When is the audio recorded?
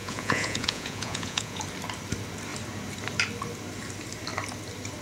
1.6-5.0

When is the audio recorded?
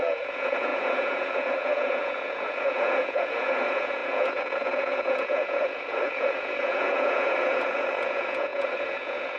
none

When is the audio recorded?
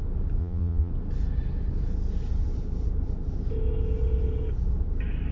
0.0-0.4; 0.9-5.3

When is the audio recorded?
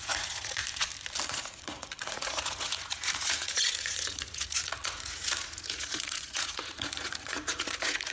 0.6-1.3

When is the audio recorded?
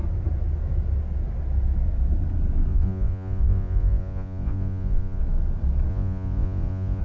0.0-2.7; 5.2-5.9